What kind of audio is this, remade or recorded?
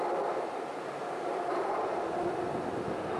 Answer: recorded